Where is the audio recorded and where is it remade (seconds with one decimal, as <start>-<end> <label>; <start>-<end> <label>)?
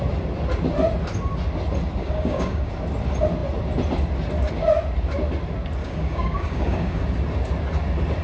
0.0-2.0 recorded; 2.0-2.7 remade; 2.7-5.8 recorded; 5.8-7.0 remade; 7.0-8.2 recorded